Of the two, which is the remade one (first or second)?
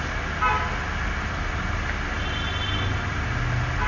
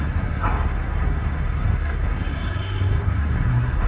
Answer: second